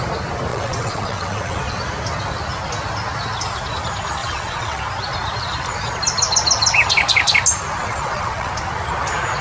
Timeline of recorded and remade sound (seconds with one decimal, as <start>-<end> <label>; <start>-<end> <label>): 0.0-0.5 recorded; 0.5-1.6 remade; 1.6-4.2 recorded; 4.2-4.8 remade; 4.8-7.8 recorded; 7.8-8.5 remade; 8.5-9.4 recorded